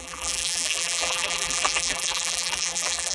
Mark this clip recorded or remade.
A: remade